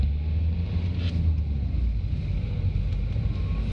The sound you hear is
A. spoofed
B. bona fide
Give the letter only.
B